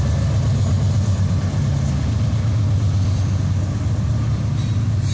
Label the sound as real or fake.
real